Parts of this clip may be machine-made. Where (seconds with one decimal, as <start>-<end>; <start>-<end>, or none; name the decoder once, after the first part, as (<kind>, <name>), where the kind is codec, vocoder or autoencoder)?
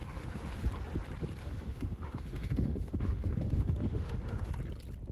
0.0-0.6 (autoencoder, DAC-VAE); 1.4-4.5